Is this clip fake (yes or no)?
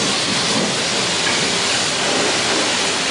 no